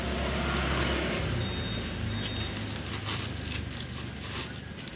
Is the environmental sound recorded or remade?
recorded